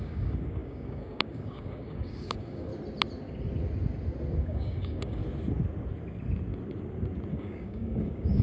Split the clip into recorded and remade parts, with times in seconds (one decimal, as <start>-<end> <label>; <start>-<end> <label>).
0.0-2.7 remade; 2.7-4.4 recorded; 4.4-5.2 remade; 5.2-7.3 recorded; 7.3-8.4 remade